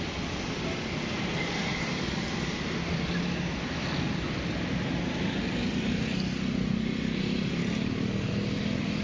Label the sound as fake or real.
real